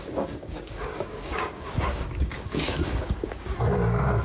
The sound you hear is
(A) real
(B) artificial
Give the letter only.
B